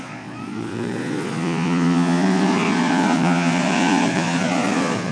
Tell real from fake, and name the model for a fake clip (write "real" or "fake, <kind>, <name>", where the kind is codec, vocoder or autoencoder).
fake, vocoder, Vocos